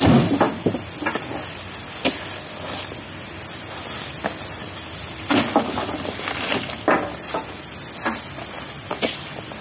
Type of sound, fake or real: real